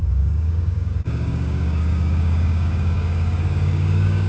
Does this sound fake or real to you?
fake